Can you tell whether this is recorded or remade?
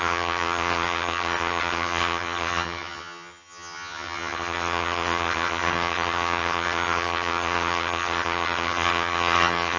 remade